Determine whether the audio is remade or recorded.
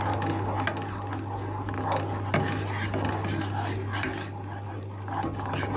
recorded